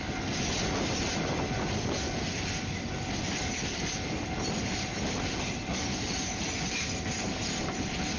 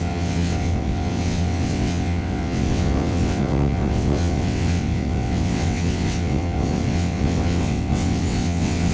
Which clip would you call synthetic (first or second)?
second